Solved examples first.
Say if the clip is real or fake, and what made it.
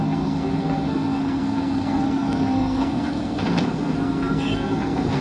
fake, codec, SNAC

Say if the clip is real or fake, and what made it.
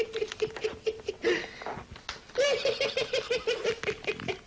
real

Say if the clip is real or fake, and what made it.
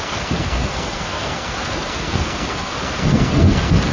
fake, codec, SNAC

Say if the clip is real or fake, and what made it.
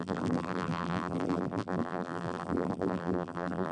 fake, vocoder, BigVGAN v2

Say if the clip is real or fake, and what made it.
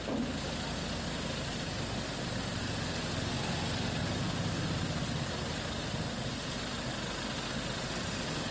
real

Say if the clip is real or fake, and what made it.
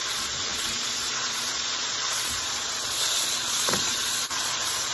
fake, vocoder, Vocos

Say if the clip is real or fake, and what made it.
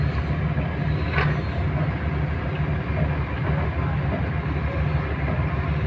real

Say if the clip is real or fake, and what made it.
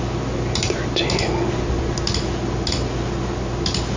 real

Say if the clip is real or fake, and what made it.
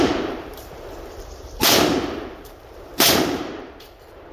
fake, vocoder, BigVGAN v2